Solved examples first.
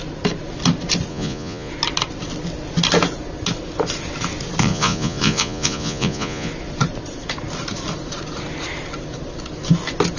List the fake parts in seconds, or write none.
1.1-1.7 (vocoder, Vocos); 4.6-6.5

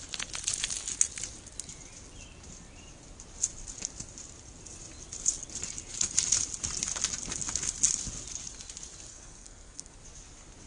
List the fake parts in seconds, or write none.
9.1-10.0 (codec, SNAC)

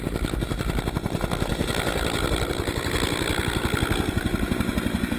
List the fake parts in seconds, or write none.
none

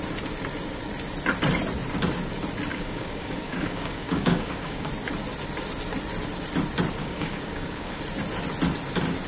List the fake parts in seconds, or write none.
2.7-4.9 (codec, DAC); 7.0-8.0